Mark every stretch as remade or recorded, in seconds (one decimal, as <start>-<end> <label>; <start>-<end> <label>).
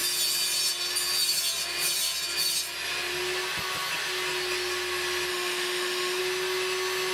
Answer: 0.0-5.3 recorded; 5.3-6.2 remade; 6.2-7.1 recorded